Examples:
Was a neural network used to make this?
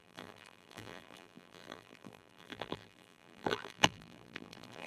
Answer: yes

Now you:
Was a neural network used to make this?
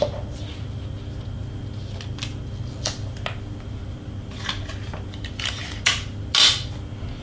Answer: no